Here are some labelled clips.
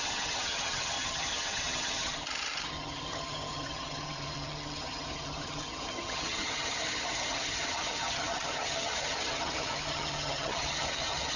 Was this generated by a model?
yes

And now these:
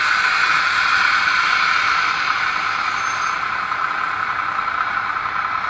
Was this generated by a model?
no